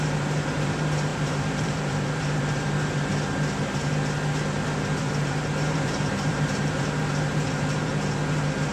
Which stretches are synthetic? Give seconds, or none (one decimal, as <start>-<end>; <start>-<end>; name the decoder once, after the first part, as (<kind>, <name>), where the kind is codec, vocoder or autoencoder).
0.0-3.1 (vocoder, BigVGAN v2); 5.0-7.9